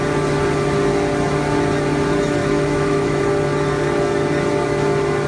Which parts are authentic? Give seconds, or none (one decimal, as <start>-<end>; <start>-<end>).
0.0-2.4; 3.2-5.3